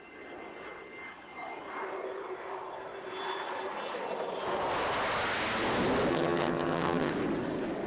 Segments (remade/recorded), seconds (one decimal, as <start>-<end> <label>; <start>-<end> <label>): 0.0-6.1 recorded; 6.1-7.1 remade; 7.1-7.9 recorded